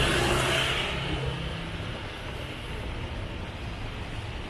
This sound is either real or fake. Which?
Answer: real